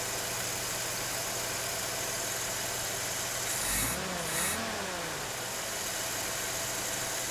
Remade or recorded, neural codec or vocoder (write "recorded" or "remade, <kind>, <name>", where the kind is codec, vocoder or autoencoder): recorded